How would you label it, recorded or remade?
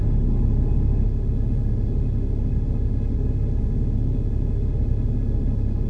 remade